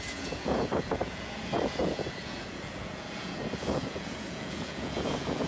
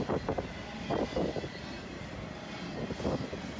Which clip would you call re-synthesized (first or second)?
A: first